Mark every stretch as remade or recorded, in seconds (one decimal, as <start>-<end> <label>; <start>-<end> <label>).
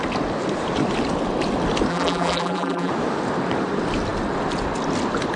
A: 0.0-1.9 recorded; 1.9-2.9 remade; 2.9-5.4 recorded